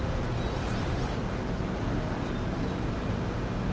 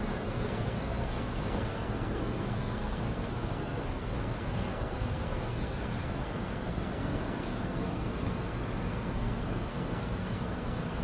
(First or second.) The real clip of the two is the first